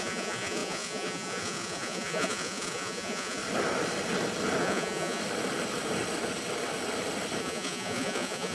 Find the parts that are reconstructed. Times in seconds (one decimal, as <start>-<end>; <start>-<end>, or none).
0.0-3.4; 4.6-5.2; 7.4-8.5